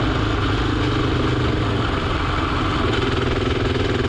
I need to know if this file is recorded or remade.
recorded